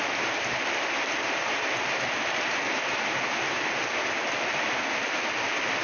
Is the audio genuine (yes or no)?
yes